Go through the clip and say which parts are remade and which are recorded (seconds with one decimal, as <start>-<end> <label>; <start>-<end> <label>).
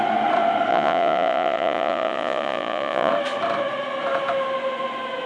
0.0-0.7 recorded; 0.7-3.1 remade; 3.1-5.3 recorded